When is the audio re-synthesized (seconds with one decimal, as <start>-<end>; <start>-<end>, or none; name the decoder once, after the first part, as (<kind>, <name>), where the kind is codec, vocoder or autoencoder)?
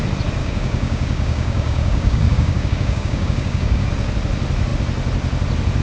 0.4-3.9 (codec, DAC)